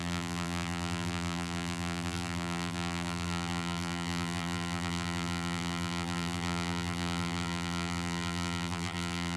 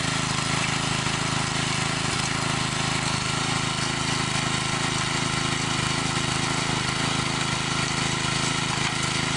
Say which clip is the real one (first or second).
second